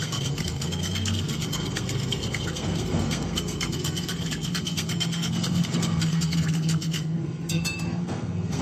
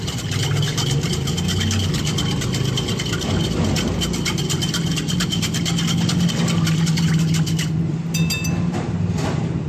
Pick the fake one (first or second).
first